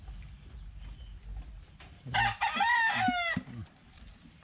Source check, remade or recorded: recorded